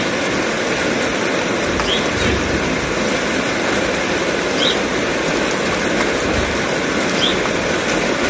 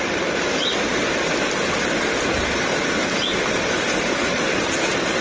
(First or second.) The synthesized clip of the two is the second